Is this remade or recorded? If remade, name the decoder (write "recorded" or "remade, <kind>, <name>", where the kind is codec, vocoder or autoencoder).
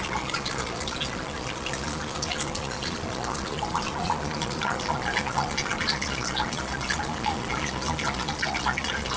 remade, vocoder, Vocos